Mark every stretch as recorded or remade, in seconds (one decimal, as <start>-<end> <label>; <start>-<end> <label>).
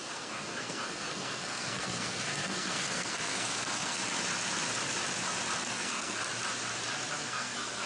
0.0-4.0 remade; 4.0-5.7 recorded; 5.7-6.2 remade; 6.2-7.1 recorded; 7.1-7.9 remade